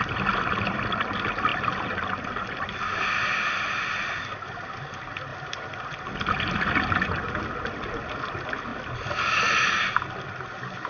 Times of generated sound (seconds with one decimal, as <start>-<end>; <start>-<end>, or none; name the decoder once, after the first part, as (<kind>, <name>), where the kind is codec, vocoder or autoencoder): none